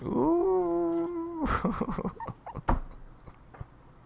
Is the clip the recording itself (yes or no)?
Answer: yes